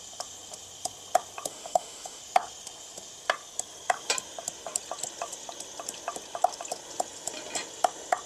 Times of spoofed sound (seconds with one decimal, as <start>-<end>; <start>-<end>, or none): 1.5-2.2